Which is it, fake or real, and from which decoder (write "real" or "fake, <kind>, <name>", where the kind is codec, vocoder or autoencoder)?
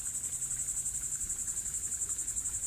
real